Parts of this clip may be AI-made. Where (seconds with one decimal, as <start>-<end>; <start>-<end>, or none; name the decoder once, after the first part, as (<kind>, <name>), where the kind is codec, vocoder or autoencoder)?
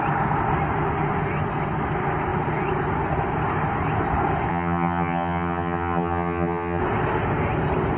4.5-6.8 (vocoder, HiFi-GAN)